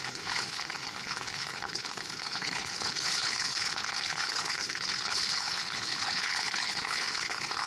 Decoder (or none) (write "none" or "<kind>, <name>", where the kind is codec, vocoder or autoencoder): codec, HILCodec